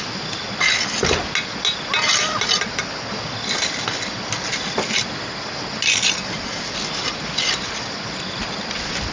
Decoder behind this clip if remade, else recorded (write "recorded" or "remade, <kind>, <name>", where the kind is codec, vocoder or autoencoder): recorded